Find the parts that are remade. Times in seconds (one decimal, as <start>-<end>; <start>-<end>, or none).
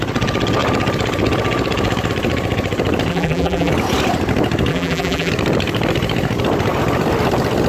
3.1-3.7; 4.7-5.3